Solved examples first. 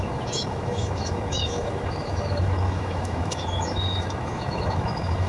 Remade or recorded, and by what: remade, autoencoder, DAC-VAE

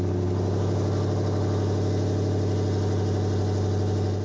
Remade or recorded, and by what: recorded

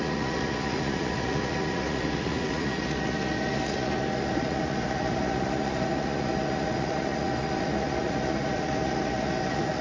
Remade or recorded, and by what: remade, vocoder, Vocos